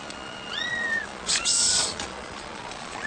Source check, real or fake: fake